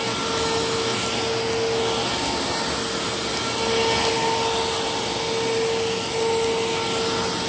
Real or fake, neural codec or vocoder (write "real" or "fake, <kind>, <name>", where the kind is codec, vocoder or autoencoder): real